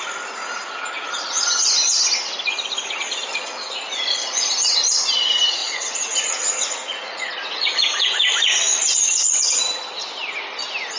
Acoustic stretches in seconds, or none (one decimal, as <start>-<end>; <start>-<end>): 0.0-3.3; 4.5-5.6; 9.4-11.0